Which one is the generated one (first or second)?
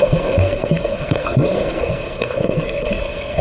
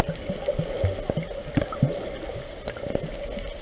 first